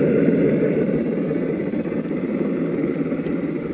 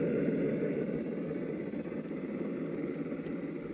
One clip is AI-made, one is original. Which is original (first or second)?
second